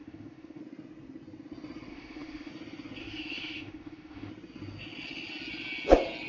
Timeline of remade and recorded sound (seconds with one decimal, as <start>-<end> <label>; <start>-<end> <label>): 0.0-0.6 remade; 0.6-1.9 recorded; 1.9-2.5 remade; 2.5-3.0 recorded; 3.0-4.3 remade; 4.3-6.3 recorded